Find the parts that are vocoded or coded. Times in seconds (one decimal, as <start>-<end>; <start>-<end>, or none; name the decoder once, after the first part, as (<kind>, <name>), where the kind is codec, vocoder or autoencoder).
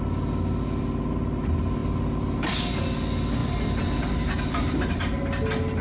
none